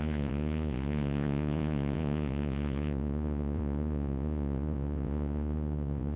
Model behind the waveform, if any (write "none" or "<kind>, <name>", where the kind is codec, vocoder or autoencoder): vocoder, Vocos